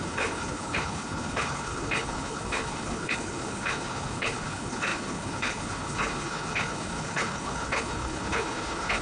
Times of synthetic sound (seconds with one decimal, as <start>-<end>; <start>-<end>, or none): 0.0-9.0

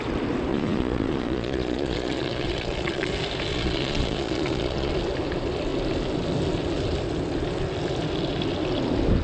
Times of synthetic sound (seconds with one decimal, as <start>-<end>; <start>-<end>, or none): 0.5-3.1; 3.5-4.9

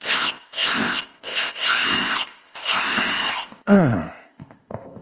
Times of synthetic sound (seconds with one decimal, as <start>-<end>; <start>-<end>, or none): 0.0-5.0

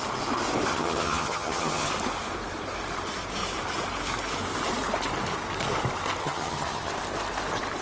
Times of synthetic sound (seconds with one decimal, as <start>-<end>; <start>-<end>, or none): 0.7-1.9; 6.2-6.9